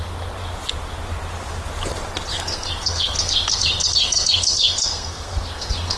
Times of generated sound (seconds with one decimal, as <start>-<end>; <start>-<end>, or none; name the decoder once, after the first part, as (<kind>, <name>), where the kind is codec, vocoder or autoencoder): 2.3-6.0 (codec, SNAC)